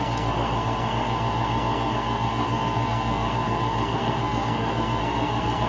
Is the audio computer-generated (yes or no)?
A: yes